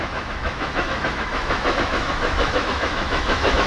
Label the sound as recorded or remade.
remade